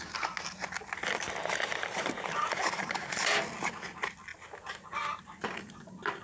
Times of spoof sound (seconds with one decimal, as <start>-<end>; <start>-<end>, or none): none